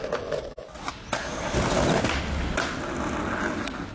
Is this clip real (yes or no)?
yes